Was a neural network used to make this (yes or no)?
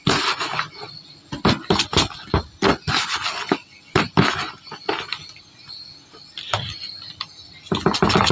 no